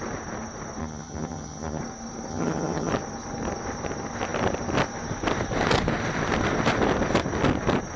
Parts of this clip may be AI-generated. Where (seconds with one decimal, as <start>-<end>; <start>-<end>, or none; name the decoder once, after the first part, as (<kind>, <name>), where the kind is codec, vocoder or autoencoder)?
0.8-1.8 (vocoder, HiFi-GAN); 2.3-2.9